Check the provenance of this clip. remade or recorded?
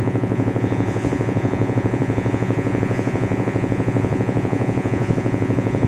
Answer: remade